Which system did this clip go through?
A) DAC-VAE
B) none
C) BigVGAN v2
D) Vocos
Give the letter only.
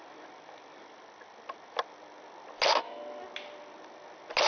B